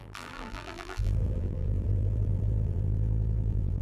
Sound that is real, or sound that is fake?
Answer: fake